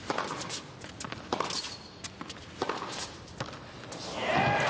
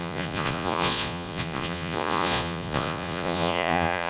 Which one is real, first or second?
first